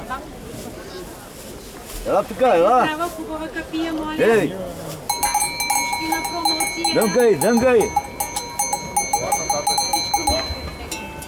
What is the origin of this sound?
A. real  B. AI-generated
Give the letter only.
A